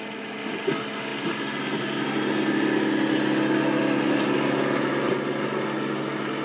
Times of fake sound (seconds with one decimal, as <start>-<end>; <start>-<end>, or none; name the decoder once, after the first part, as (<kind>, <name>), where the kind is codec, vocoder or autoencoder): none